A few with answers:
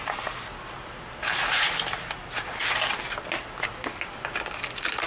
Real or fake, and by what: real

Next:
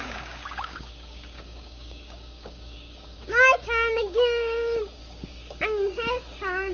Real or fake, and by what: fake, codec, DAC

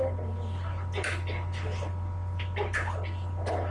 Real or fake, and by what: real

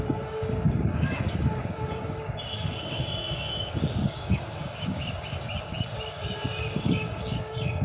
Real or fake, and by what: fake, codec, DAC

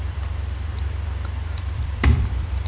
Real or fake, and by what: fake, vocoder, BigVGAN v2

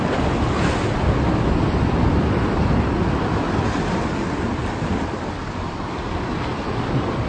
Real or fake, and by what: real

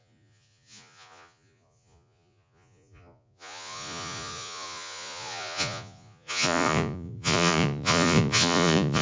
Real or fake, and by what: fake, vocoder, Vocos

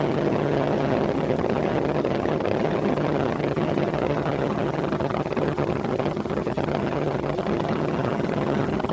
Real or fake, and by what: fake, vocoder, HiFi-GAN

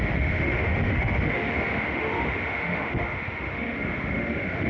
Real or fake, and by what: fake, autoencoder, DAC-VAE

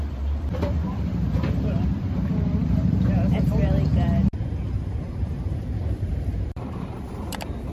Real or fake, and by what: fake, vocoder, BigVGAN v2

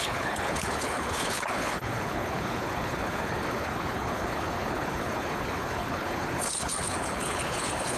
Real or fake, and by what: fake, codec, HILCodec